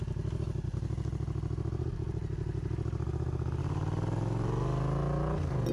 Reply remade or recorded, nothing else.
recorded